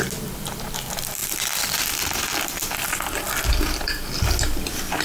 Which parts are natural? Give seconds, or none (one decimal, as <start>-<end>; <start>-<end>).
0.0-1.2; 4.2-5.0